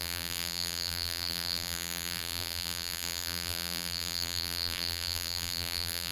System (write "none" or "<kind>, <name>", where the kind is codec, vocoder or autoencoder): vocoder, BigVGAN v2